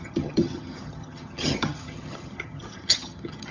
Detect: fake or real fake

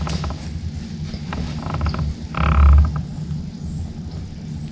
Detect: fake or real real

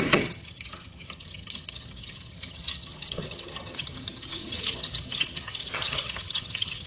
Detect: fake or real fake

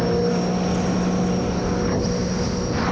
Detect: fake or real real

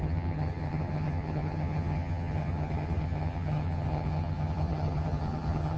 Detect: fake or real fake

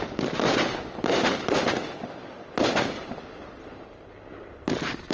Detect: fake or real real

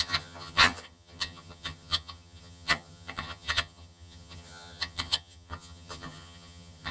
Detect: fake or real fake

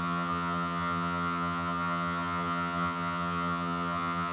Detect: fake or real fake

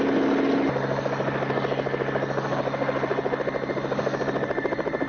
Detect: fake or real real